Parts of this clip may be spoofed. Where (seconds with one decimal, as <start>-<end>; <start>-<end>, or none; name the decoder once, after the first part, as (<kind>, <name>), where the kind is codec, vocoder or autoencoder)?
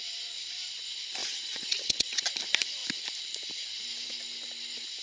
1.2-2.2 (vocoder, WaveNeXt)